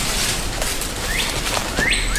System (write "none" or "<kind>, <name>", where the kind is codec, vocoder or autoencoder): none